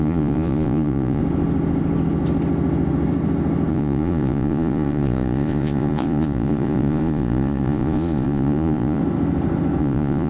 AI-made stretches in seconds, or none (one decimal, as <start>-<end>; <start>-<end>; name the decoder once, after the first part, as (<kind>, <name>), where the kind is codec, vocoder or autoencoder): 0.0-1.2 (vocoder, Vocos); 3.7-9.0; 9.8-10.3